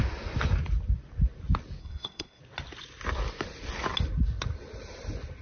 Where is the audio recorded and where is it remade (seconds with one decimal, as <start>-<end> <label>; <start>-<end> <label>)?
0.0-1.8 recorded; 1.8-2.4 remade; 2.4-5.4 recorded